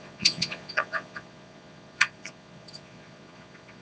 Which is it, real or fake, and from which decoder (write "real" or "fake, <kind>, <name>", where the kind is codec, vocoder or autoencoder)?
fake, vocoder, Vocos